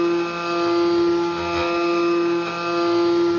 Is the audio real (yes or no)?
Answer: yes